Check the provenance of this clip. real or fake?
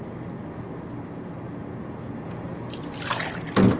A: real